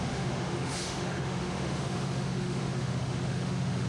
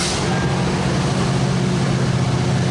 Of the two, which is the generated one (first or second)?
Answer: first